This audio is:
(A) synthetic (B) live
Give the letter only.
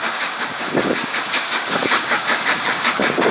A